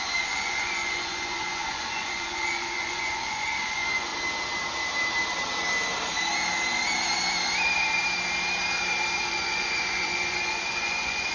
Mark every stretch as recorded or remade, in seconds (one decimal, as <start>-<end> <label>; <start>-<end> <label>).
0.0-4.1 remade; 4.1-9.3 recorded; 9.3-11.3 remade